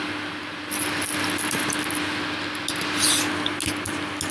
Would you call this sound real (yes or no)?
yes